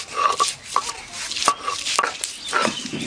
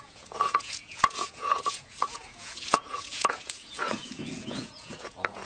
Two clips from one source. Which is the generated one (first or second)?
second